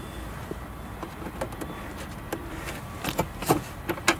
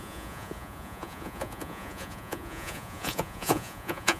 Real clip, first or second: first